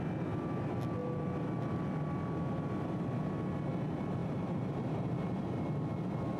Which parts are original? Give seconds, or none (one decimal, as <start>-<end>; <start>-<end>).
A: 0.0-4.2; 5.3-6.4